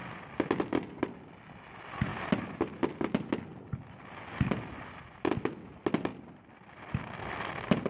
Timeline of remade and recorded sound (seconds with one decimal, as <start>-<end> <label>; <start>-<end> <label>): 0.0-7.9 recorded